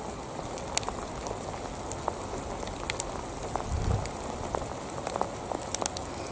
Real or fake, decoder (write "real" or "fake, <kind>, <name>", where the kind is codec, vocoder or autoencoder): real